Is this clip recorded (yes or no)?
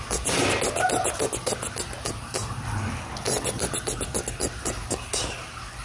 yes